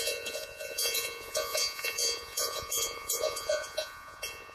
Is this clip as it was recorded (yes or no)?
no